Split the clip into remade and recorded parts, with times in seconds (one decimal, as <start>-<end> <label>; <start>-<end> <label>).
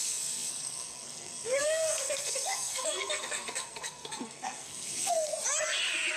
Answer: 0.0-5.3 remade; 5.3-6.2 recorded